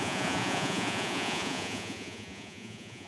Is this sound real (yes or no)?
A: no